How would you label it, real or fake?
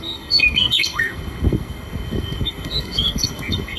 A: fake